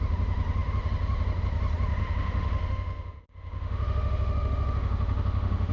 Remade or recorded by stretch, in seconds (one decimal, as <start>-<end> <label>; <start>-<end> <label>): 0.0-2.0 recorded; 2.0-5.7 remade